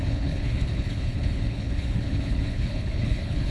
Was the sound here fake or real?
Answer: fake